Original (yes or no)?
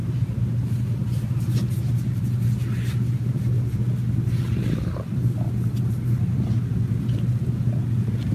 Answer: yes